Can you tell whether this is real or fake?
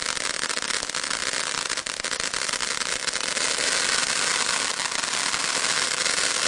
real